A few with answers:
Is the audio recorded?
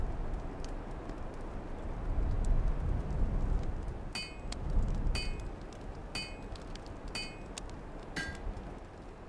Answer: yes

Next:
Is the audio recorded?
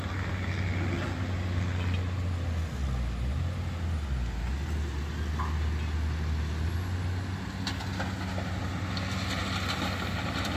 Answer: yes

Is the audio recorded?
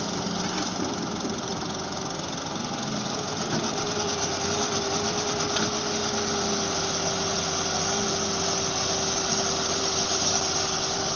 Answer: yes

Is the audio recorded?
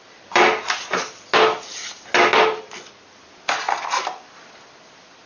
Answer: yes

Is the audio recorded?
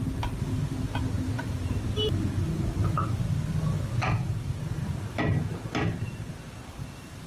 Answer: no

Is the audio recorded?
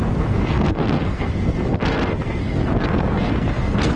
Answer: no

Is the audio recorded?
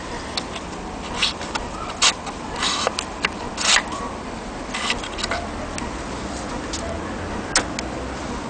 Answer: yes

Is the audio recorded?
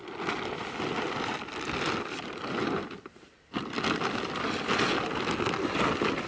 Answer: yes